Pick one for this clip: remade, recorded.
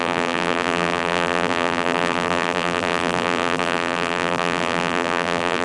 remade